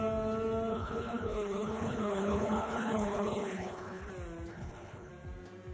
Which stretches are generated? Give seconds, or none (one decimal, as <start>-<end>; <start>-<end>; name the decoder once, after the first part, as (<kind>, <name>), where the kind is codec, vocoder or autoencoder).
0.7-4.1 (codec, HILCodec); 4.5-5.1